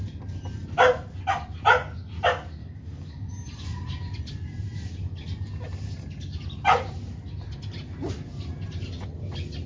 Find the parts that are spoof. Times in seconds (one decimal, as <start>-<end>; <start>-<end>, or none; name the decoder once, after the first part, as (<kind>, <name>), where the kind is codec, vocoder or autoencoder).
2.6-3.3 (codec, DAC)